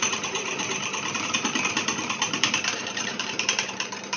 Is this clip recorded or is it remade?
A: remade